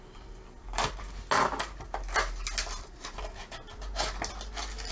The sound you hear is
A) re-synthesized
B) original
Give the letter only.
B